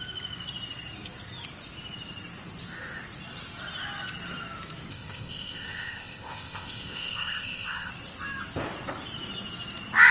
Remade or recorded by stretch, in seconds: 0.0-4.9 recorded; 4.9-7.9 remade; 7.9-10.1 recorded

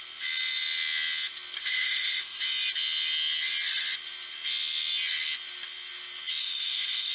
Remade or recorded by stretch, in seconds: 0.0-1.6 recorded; 1.6-2.4 remade; 2.4-6.4 recorded; 6.4-7.1 remade